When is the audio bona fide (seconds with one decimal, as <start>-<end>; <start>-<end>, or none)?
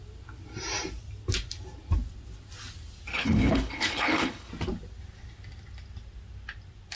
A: 0.0-3.1; 4.5-6.9